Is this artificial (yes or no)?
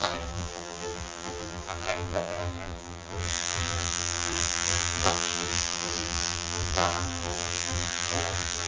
yes